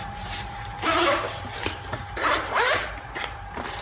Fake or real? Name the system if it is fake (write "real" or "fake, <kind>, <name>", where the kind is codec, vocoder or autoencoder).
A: fake, vocoder, BigVGAN v2